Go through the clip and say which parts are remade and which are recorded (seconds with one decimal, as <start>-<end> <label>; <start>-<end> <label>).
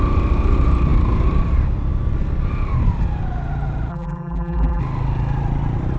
0.0-3.9 recorded; 3.9-4.8 remade; 4.8-6.0 recorded